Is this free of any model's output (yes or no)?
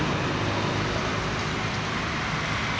yes